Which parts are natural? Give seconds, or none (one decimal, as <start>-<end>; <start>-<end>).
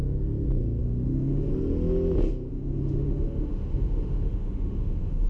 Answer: 0.0-0.8; 1.5-2.5